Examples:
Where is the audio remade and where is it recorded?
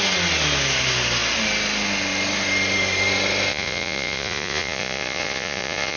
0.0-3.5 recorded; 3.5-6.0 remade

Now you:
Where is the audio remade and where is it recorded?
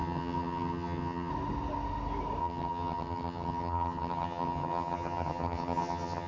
0.0-1.3 remade; 1.3-2.4 recorded; 2.4-6.3 remade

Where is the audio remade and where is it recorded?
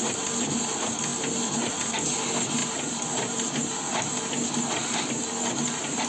0.0-6.1 recorded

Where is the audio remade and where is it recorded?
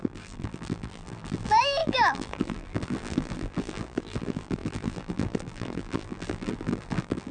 0.0-7.3 remade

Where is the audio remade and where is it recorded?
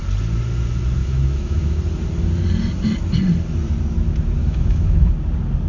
0.0-1.0 recorded; 1.0-1.8 remade; 1.8-4.4 recorded; 4.4-5.1 remade; 5.1-5.7 recorded